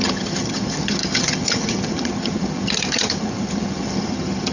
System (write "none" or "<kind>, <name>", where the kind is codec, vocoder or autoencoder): vocoder, HiFi-GAN